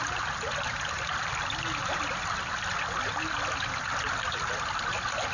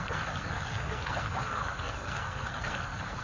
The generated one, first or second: second